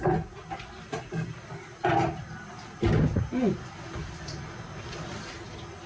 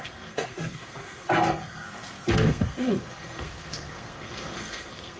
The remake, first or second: second